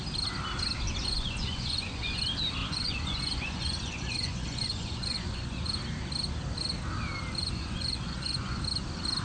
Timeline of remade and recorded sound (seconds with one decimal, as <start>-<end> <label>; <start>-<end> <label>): 0.0-1.0 recorded; 1.0-2.2 remade; 2.2-2.6 recorded; 2.6-5.7 remade; 5.7-7.4 recorded; 7.4-8.6 remade; 8.6-9.2 recorded